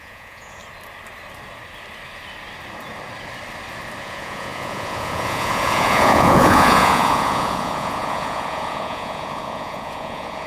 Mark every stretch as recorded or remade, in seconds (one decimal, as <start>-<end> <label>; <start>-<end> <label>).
0.0-0.6 remade; 0.6-4.0 recorded; 4.0-10.5 remade